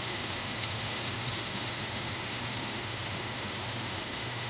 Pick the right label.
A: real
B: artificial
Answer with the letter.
B